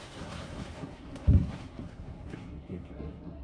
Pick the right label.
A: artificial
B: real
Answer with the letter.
A